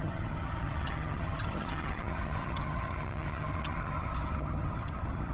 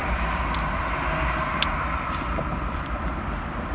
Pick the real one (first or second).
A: second